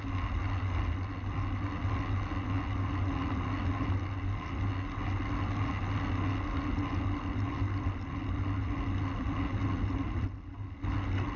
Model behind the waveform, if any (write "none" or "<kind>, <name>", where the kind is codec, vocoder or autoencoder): none